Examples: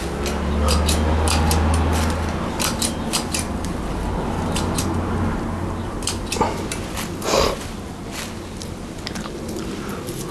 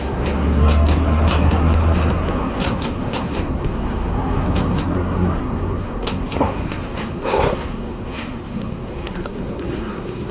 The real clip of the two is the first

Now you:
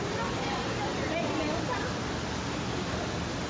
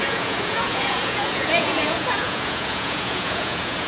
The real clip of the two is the first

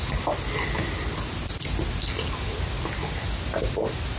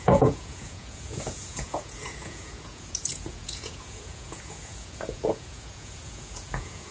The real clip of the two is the first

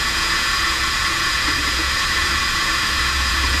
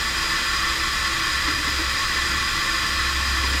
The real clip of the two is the second